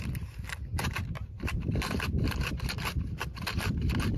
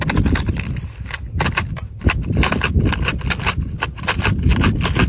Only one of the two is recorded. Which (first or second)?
second